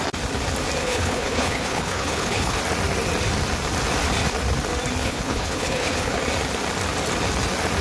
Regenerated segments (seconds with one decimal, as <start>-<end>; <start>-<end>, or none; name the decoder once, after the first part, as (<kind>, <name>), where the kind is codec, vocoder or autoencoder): 0.8-2.6 (codec, HILCodec); 5.0-6.2

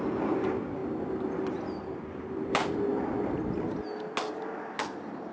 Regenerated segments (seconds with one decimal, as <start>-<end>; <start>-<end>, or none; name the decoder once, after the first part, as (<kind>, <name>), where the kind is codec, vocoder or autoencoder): none

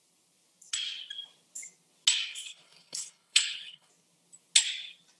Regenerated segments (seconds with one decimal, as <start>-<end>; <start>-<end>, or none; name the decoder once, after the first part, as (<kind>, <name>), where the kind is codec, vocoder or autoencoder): 2.3-3.9 (codec, HILCodec)

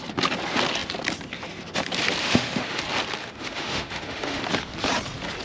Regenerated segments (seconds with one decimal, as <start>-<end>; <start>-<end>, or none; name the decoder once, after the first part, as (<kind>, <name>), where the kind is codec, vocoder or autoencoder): 2.2-2.8 (autoencoder, DAC-VAE); 3.2-4.4

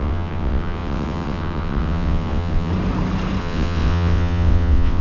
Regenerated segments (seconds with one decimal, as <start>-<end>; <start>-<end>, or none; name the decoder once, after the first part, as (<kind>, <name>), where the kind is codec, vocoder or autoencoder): 0.0-2.7 (vocoder, WaveNeXt); 3.4-5.0

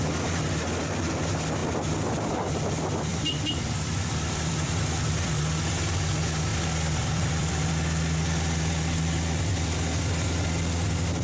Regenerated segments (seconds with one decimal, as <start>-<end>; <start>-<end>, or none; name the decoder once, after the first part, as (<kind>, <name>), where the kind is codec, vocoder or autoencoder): 3.1-5.3 (vocoder, BigVGAN v2); 6.5-7.7